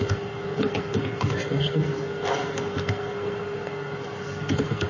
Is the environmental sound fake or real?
fake